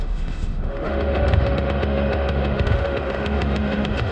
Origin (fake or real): fake